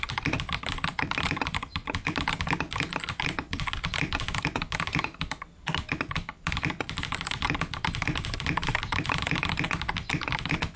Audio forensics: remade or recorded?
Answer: recorded